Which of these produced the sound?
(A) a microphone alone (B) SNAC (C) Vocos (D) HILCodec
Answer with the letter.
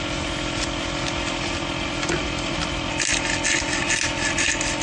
A